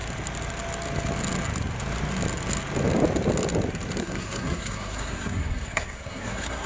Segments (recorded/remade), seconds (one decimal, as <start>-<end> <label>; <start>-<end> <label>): 0.0-4.0 recorded; 4.0-6.7 remade